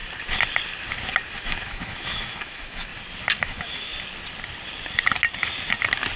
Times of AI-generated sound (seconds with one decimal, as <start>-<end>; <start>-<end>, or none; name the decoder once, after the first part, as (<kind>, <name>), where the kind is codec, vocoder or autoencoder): 1.4-2.9 (autoencoder, DAC-VAE); 3.4-3.9

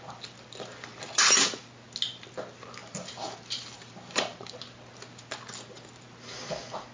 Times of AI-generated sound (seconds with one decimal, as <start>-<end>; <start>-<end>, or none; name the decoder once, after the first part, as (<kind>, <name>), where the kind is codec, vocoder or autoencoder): 2.8-4.6 (vocoder, BigVGAN v2)

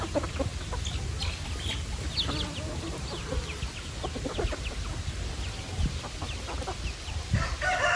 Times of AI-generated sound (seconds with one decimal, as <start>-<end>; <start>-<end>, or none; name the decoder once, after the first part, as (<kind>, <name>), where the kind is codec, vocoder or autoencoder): none

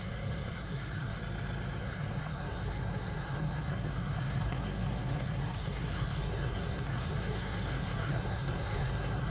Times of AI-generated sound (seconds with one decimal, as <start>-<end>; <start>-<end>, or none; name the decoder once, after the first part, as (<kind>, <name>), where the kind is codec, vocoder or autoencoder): 0.0-1.2 (codec, SNAC); 1.8-9.3

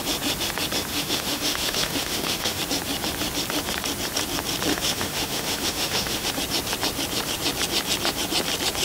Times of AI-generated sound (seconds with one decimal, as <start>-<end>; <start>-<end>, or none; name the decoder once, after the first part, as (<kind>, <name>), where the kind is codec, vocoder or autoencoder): 0.9-2.6 (autoencoder, DAC-VAE); 4.7-6.3

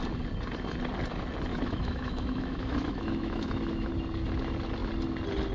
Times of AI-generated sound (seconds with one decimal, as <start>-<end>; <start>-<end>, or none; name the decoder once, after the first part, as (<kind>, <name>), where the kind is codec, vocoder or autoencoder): 1.5-3.9 (autoencoder, DAC-VAE)

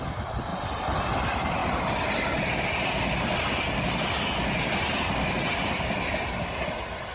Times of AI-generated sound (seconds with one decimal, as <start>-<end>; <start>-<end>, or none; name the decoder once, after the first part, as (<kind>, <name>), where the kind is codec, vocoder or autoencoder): none